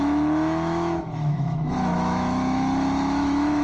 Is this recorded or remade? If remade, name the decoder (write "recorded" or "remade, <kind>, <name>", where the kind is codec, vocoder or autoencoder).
remade, autoencoder, DAC-VAE